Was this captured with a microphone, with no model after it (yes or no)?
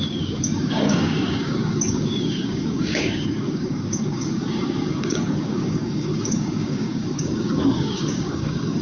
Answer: no